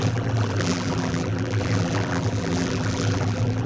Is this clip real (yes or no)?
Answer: no